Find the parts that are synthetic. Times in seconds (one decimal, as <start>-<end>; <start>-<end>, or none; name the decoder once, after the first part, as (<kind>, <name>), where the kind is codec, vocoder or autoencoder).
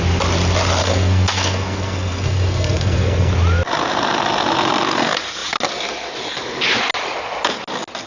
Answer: 0.8-3.3 (codec, SNAC)